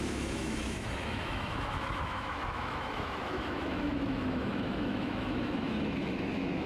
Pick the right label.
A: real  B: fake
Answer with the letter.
B